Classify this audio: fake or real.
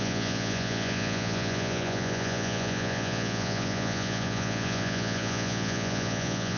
fake